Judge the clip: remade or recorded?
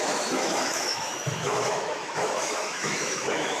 remade